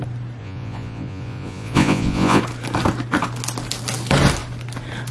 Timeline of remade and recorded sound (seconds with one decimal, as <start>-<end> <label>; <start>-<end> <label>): 0.0-0.4 recorded; 0.4-2.4 remade; 2.4-5.1 recorded